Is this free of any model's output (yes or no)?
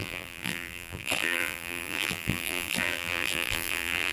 no